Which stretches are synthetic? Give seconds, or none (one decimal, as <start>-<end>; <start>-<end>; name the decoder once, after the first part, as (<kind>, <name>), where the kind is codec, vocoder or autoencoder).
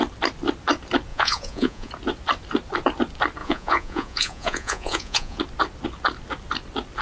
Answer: 1.1-1.9 (vocoder, Vocos); 3.4-5.4